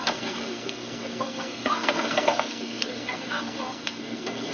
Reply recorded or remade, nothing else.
remade